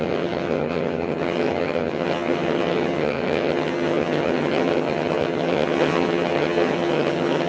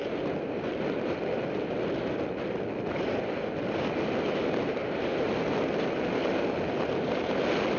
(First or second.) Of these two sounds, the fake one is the first